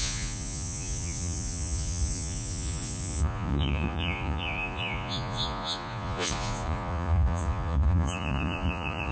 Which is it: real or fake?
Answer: fake